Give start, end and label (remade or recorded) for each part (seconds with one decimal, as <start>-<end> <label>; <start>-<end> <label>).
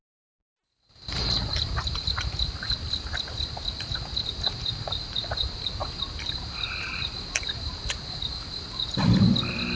0.0-9.8 recorded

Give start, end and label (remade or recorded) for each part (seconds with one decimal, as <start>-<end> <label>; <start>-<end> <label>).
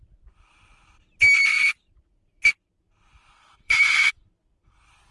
0.0-1.4 recorded; 1.4-2.4 remade; 2.4-3.2 recorded; 3.2-4.1 remade; 4.1-5.1 recorded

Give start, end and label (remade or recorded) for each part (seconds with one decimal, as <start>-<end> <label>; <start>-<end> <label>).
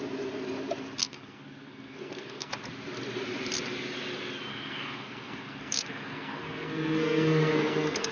0.0-1.0 recorded; 1.0-2.5 remade; 2.5-4.5 recorded; 4.5-8.1 remade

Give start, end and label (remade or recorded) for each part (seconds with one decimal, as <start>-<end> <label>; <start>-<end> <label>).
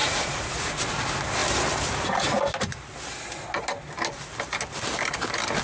0.0-0.7 remade; 0.7-5.6 recorded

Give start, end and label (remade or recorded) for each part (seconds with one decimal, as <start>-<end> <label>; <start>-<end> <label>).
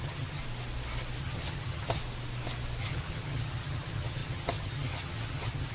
0.0-0.4 remade; 0.4-1.2 recorded; 1.2-2.0 remade; 2.0-2.8 recorded; 2.8-5.7 remade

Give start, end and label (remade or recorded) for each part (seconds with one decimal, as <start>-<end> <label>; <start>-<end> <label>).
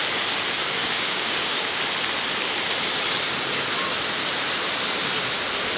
0.0-0.6 recorded; 0.6-1.8 remade; 1.8-5.8 recorded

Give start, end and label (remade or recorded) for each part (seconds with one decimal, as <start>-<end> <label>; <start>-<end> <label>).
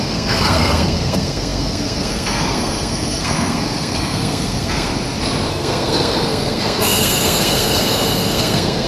0.0-4.9 remade; 4.9-5.5 recorded; 5.5-8.9 remade